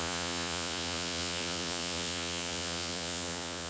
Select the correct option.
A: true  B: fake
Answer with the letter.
B